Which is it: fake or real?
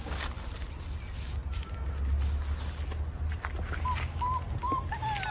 real